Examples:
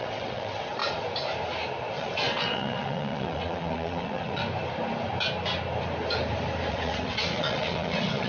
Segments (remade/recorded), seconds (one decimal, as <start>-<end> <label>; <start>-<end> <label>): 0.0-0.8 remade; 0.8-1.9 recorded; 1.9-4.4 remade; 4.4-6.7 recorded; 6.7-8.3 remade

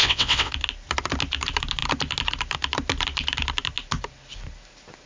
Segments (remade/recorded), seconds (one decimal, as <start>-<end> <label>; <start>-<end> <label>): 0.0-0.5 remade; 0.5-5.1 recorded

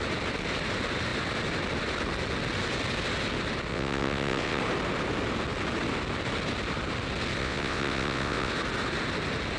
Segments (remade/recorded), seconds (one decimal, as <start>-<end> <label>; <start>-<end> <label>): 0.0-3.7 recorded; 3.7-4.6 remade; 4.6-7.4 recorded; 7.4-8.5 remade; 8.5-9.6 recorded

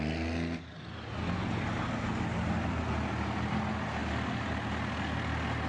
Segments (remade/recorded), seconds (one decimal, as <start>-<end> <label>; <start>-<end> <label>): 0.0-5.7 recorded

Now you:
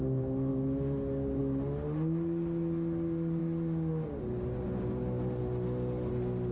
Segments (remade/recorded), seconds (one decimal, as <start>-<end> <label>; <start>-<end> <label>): 0.0-6.5 recorded